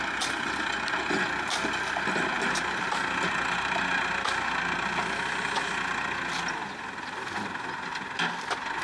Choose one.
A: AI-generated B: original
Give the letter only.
B